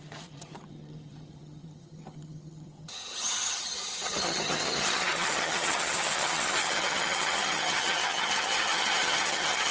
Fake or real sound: fake